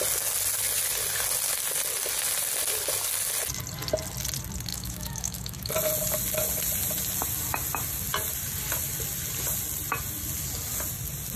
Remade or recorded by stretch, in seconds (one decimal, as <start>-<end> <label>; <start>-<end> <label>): 0.0-4.7 recorded; 4.7-5.7 remade; 5.7-11.4 recorded